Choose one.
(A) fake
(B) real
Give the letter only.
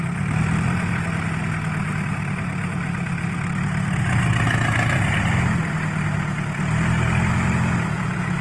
B